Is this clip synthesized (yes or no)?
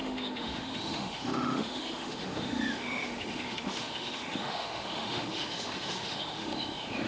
yes